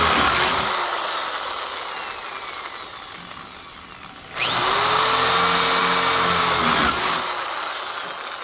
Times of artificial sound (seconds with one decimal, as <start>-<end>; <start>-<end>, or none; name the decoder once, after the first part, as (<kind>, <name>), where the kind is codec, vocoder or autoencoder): none

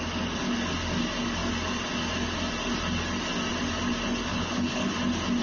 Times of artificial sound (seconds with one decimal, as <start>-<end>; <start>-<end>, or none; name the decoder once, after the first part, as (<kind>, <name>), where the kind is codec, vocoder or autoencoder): 4.3-4.9 (codec, HILCodec)

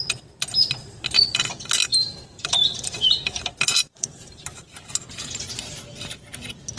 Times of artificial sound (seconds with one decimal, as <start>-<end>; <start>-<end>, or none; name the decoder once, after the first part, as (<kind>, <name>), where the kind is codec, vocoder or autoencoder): 1.9-4.6 (vocoder, BigVGAN v2)

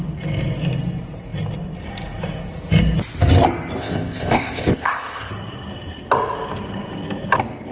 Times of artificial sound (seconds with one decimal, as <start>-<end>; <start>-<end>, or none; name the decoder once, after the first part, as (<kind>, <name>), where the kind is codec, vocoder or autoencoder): 3.8-5.3 (codec, ZipCodec)

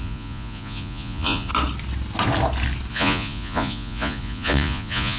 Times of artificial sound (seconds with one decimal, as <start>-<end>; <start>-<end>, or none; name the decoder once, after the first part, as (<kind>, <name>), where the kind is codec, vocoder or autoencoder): 0.0-1.5 (vocoder, Vocos); 2.9-5.2